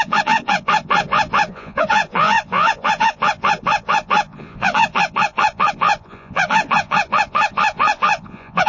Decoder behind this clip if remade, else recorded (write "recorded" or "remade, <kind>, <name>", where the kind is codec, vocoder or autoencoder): remade, vocoder, Vocos